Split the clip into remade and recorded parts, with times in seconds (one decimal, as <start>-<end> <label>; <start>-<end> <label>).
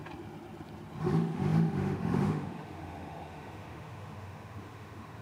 0.0-1.0 recorded; 1.0-5.2 remade